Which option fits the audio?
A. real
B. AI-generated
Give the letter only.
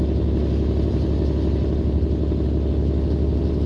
A